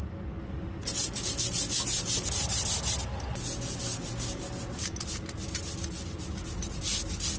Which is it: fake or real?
real